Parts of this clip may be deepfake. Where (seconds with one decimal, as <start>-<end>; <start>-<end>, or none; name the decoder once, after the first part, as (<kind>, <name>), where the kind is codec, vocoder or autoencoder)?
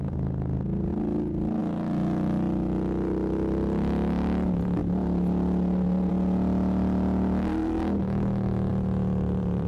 4.8-6.1 (vocoder, BigVGAN v2); 8.7-9.7